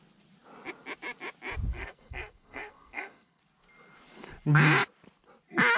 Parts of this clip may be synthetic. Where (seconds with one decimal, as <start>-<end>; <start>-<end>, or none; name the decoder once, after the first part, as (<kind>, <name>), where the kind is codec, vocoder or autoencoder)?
1.7-3.4 (codec, SNAC)

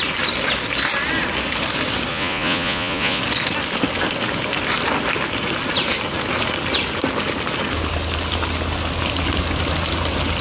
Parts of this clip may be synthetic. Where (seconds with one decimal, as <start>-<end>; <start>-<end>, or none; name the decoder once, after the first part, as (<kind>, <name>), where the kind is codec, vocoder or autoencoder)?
2.1-3.2 (vocoder, Vocos)

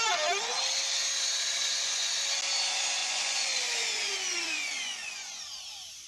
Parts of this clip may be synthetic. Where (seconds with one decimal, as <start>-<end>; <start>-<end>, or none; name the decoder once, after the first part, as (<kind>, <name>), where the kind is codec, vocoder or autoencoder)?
1.6-2.1 (vocoder, Vocos); 3.0-5.4